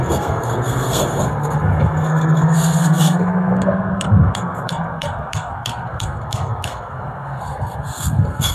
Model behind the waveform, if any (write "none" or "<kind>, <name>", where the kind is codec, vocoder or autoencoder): codec, SNAC